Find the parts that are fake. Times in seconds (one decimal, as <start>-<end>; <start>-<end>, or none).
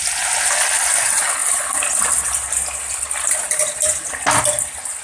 none